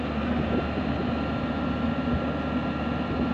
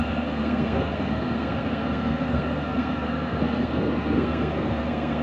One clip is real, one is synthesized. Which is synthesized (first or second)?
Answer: second